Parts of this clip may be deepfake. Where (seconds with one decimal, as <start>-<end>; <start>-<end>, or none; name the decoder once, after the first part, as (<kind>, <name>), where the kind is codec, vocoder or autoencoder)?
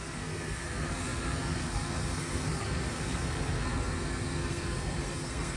0.0-5.6 (codec, SNAC)